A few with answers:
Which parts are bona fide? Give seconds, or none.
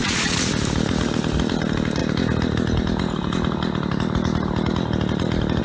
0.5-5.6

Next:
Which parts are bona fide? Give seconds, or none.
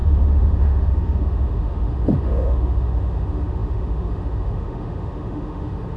none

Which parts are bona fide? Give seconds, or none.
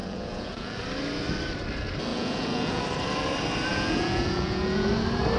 0.8-2.1; 2.8-3.7; 4.9-5.4